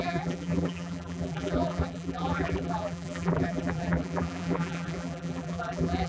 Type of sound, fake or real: fake